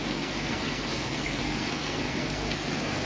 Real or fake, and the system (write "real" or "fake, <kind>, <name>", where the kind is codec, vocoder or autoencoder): fake, codec, SNAC